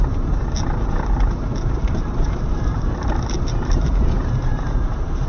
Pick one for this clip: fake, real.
fake